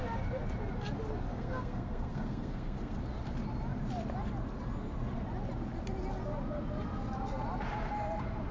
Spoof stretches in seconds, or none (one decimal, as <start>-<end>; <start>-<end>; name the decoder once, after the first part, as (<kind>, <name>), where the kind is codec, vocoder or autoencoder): 1.3-3.0 (codec, SNAC)